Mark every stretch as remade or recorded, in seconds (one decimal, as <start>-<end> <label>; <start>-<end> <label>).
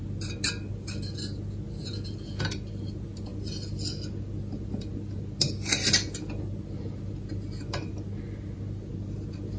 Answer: 0.0-9.6 recorded